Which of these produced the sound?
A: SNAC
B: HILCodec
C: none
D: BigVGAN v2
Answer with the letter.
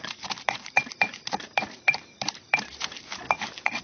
D